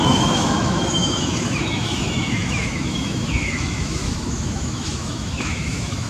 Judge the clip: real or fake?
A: fake